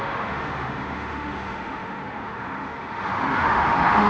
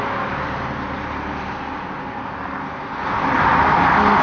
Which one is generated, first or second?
first